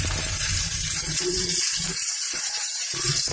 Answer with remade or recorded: remade